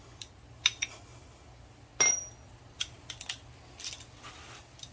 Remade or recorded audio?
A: recorded